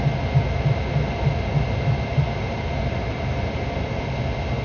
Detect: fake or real real